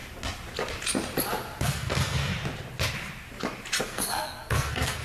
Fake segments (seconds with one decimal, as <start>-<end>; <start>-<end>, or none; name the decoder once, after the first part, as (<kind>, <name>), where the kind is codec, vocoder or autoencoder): 1.6-2.3 (codec, SNAC); 3.8-5.0